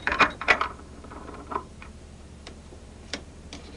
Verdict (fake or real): fake